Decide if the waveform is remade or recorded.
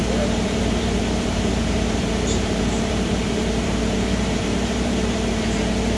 remade